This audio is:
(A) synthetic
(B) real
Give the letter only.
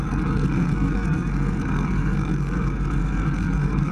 A